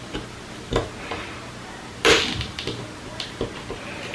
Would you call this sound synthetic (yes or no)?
no